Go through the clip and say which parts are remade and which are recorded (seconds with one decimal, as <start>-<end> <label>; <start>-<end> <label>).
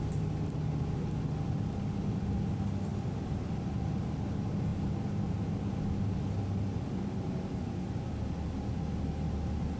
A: 0.0-9.8 recorded